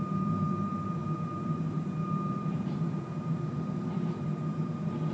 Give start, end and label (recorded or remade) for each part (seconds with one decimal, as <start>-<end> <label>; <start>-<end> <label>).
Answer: 0.0-5.1 remade